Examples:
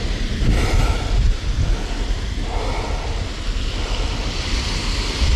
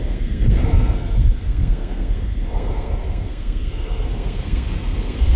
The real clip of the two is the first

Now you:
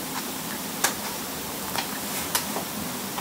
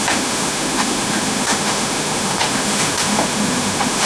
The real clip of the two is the first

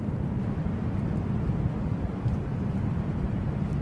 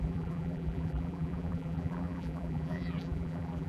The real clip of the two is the first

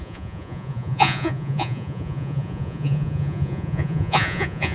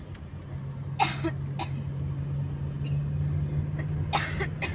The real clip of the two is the second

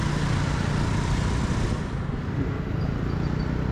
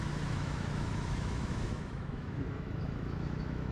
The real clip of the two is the first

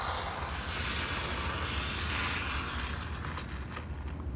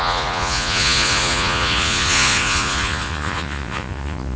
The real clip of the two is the first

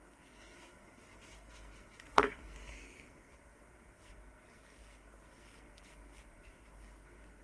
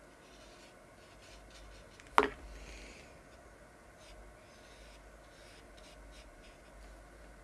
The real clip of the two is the second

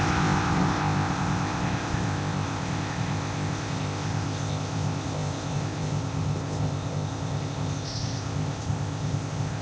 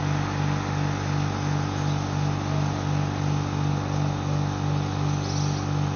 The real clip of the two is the second